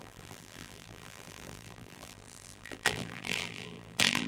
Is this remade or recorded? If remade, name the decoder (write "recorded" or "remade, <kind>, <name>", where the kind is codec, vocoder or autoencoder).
remade, vocoder, BigVGAN v2